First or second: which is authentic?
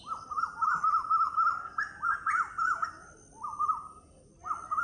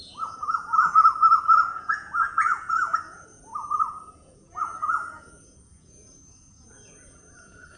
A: first